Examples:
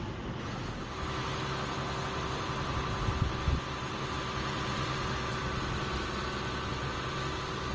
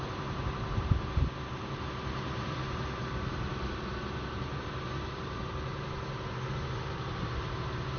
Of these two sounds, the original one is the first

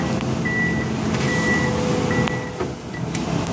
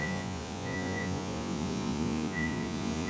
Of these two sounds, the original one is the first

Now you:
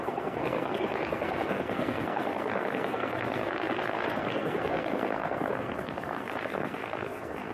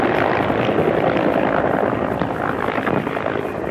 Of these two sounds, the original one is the second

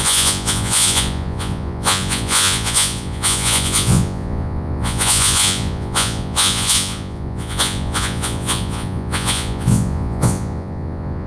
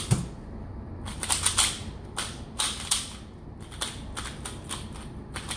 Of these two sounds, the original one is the second